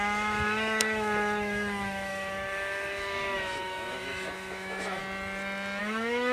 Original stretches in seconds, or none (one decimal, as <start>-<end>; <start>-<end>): 5.0-5.8